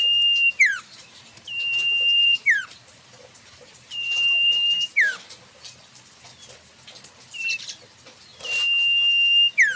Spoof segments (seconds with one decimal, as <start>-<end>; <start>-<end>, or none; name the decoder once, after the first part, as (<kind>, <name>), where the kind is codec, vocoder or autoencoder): 0.7-5.5 (vocoder, BigVGAN v2)